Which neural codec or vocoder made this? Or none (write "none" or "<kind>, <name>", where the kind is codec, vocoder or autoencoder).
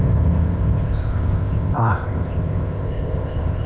codec, ZipCodec